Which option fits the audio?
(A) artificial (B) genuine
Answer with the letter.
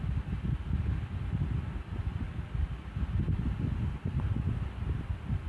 B